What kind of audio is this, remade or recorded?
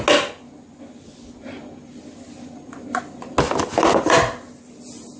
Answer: recorded